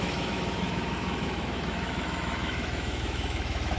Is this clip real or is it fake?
fake